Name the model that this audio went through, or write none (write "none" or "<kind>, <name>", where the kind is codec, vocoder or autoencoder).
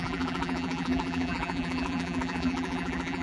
vocoder, BigVGAN v2